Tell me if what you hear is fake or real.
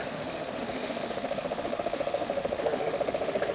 fake